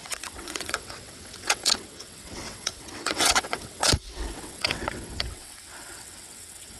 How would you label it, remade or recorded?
remade